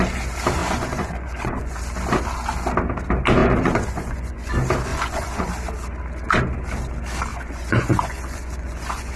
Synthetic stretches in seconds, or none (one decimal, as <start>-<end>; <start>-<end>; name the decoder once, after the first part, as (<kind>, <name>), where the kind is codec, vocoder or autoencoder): 0.6-1.8 (vocoder, Vocos); 3.4-4.5; 4.9-5.5; 7.3-9.2

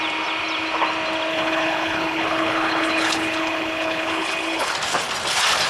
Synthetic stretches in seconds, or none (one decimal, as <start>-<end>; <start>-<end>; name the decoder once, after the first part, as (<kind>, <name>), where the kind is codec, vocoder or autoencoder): 1.3-4.7 (codec, HILCodec)

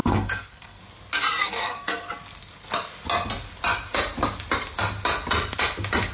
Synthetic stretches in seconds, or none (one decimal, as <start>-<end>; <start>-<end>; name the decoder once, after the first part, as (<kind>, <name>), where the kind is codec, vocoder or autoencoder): 0.0-0.8 (codec, SNAC); 1.4-2.1